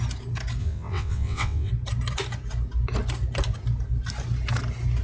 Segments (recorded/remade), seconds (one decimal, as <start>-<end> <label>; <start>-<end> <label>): 0.0-0.6 recorded; 0.6-1.7 remade; 1.7-5.0 recorded